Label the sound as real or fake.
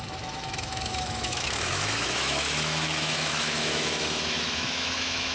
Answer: fake